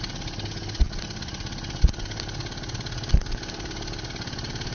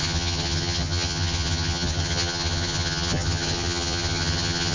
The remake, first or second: second